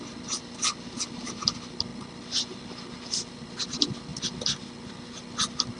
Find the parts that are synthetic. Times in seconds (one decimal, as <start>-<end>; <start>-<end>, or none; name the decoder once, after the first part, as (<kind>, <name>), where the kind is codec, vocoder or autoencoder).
none